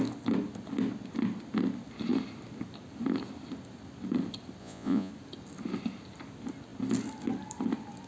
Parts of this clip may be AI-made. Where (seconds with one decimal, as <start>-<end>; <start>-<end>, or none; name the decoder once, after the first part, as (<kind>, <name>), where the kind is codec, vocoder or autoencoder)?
4.6-5.1 (vocoder, Vocos)